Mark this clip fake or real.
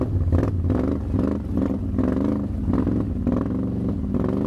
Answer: real